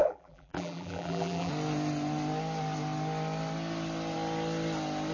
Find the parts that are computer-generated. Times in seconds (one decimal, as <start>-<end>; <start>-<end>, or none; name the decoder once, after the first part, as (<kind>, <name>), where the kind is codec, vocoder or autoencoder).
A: 0.0-1.5 (vocoder, BigVGAN v2)